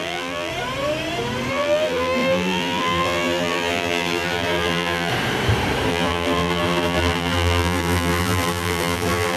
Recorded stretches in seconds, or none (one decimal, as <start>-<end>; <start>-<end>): 0.5-1.5; 5.1-5.9